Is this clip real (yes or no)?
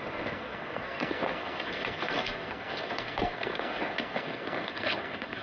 no